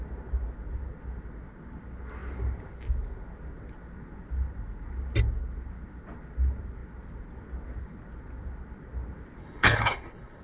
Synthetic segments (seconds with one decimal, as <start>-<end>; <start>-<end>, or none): 9.4-10.4